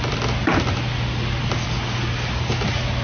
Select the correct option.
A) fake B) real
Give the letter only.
B